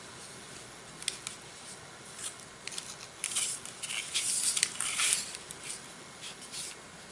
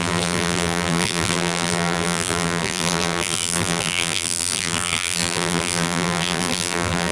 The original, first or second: first